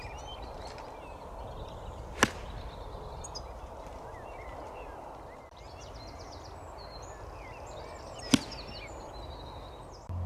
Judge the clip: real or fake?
real